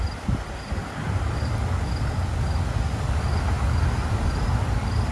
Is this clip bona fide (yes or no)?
yes